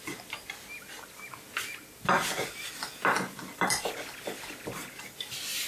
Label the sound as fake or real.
real